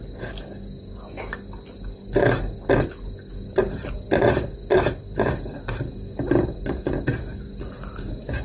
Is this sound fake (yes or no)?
no